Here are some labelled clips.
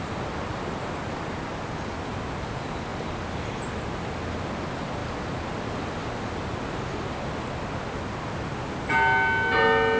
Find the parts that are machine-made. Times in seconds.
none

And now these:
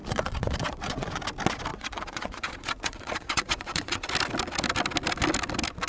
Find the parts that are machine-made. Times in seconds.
0.0-1.2 (vocoder, Vocos); 1.7-4.1

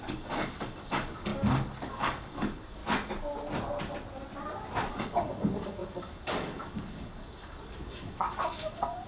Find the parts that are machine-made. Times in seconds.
0.0-2.8 (codec, DAC); 4.9-9.1

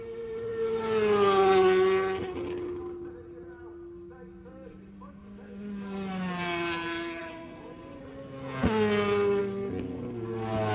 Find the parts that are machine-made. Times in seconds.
7.2-8.1 (vocoder, Vocos)

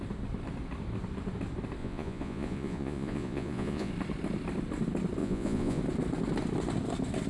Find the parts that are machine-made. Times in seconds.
1.8-3.9 (vocoder, Vocos); 5.2-5.8

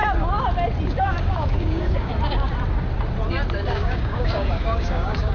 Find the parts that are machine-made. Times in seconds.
1.0-2.1 (codec, DAC); 3.7-5.3